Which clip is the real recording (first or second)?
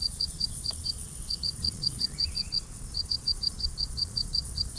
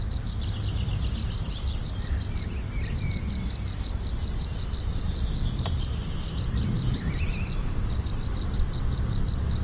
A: second